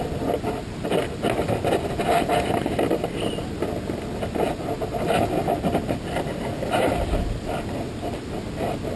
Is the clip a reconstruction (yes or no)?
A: no